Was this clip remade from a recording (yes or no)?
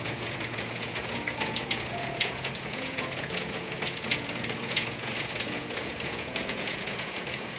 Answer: yes